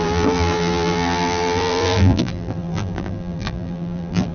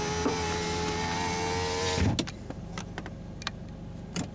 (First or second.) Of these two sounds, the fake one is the first